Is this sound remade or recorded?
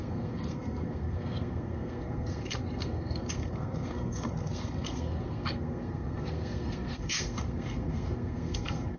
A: remade